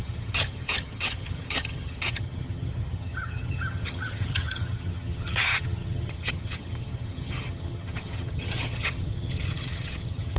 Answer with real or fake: fake